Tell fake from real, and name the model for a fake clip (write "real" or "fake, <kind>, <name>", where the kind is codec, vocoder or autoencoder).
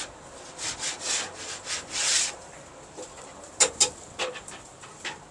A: real